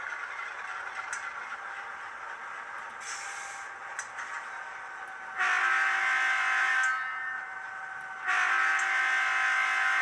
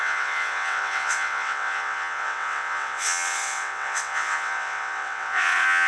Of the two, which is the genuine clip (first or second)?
first